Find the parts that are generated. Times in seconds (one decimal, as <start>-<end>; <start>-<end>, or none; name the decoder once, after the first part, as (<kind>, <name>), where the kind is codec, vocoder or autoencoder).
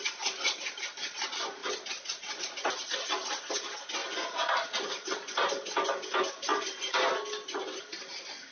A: none